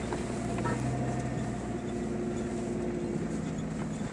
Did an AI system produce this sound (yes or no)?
no